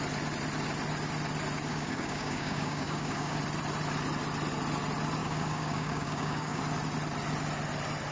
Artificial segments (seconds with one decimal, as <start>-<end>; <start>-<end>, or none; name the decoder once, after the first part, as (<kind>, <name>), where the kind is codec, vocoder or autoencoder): 1.7-3.4 (codec, DAC); 5.2-6.6